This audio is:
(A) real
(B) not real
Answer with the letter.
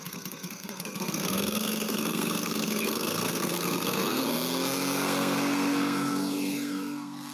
B